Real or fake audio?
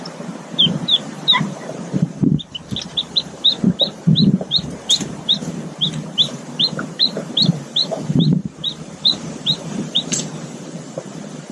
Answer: fake